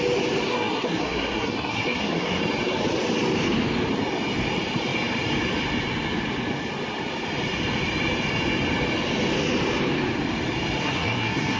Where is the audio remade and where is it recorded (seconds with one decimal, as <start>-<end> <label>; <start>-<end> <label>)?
0.0-0.5 recorded; 0.5-2.4 remade; 2.4-10.8 recorded; 10.8-11.6 remade